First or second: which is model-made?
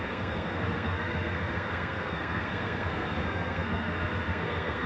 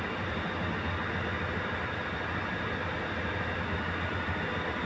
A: first